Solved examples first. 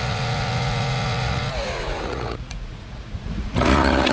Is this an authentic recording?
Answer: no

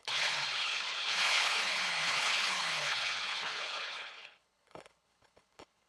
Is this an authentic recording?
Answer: no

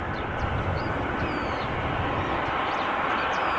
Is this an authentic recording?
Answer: yes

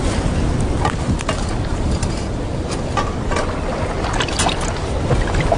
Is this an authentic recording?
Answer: yes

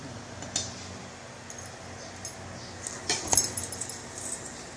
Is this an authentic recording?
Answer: yes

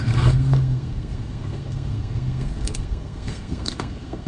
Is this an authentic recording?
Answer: no